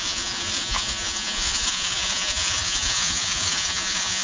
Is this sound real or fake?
fake